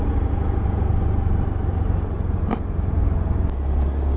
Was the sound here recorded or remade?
recorded